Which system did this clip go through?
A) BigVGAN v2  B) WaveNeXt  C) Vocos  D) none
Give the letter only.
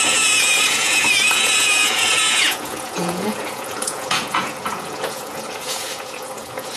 C